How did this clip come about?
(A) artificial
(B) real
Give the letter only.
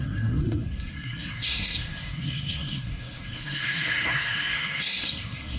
A